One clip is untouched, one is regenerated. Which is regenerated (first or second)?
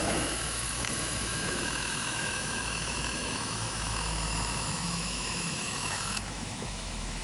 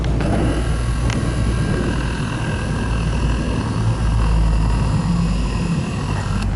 first